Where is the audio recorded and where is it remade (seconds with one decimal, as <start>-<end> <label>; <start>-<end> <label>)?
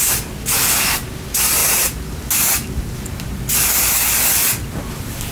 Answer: 0.0-5.3 remade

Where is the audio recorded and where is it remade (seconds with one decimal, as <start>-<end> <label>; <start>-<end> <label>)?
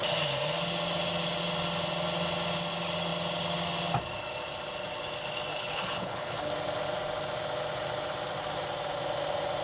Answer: 0.0-5.5 recorded; 5.5-6.5 remade; 6.5-9.6 recorded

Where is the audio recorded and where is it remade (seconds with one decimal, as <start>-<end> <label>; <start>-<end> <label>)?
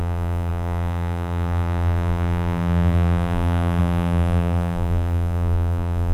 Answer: 0.0-6.1 remade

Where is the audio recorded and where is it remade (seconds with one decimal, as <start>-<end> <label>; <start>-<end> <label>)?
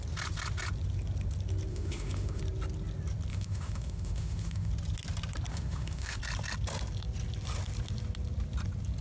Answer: 0.0-1.7 recorded; 1.7-2.4 remade; 2.4-3.3 recorded; 3.3-4.7 remade; 4.7-5.5 recorded; 5.5-6.2 remade; 6.2-9.0 recorded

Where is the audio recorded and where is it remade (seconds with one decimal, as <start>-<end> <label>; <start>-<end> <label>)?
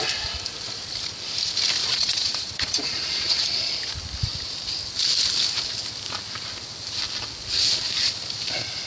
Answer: 0.0-1.8 recorded; 1.8-3.7 remade; 3.7-8.9 recorded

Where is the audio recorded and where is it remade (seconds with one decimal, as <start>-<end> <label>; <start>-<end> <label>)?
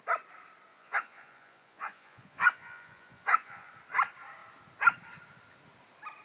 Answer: 0.0-0.7 recorded; 0.7-3.7 remade; 3.7-6.2 recorded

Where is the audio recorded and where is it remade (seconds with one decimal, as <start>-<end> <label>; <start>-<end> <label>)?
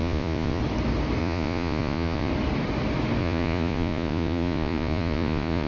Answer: 0.0-0.6 remade; 0.6-1.2 recorded; 1.2-2.3 remade; 2.3-3.2 recorded; 3.2-5.7 remade